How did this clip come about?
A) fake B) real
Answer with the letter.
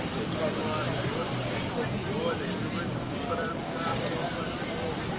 B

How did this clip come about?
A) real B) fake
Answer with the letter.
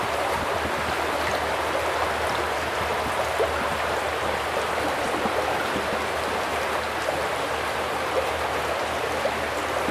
A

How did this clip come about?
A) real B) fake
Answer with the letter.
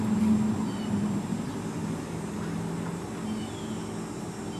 A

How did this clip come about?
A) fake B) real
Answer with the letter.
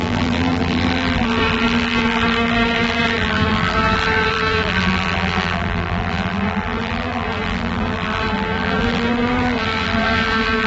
A